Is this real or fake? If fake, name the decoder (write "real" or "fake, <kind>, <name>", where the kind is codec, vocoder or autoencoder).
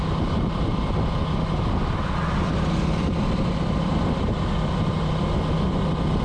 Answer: real